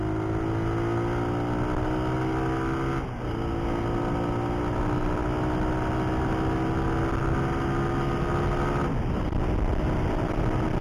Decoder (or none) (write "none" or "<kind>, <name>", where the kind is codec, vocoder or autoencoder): none